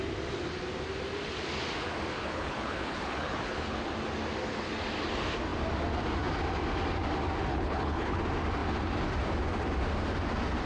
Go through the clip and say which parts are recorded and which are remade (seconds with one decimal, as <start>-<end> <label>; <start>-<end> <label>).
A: 0.0-2.1 recorded; 2.1-3.8 remade; 3.8-7.5 recorded; 7.5-8.2 remade; 8.2-10.7 recorded